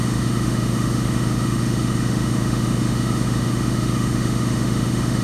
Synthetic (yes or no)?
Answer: yes